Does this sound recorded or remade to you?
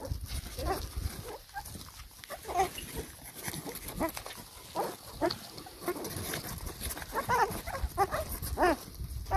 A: recorded